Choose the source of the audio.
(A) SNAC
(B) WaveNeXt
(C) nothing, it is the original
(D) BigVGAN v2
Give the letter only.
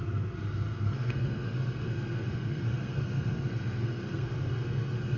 A